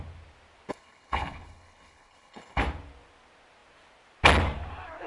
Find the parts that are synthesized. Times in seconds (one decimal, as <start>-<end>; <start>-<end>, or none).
0.7-2.6